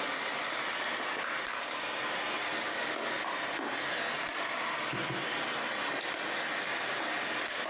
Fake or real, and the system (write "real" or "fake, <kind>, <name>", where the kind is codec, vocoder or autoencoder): real